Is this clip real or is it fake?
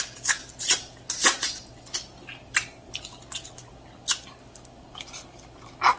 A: real